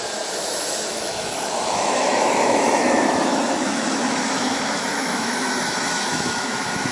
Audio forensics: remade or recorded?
remade